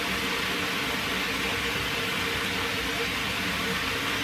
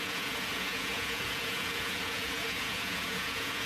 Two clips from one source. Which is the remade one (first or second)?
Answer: second